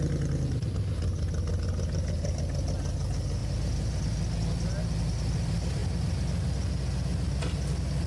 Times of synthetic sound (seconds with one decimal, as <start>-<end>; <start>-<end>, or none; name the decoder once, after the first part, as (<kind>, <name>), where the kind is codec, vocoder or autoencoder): 1.5-2.4 (vocoder, BigVGAN v2); 3.4-4.0